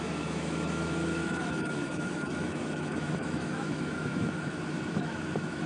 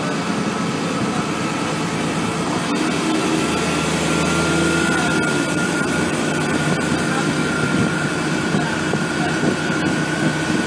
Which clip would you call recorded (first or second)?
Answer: second